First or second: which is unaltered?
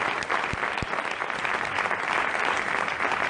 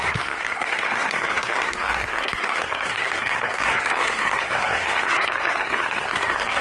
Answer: first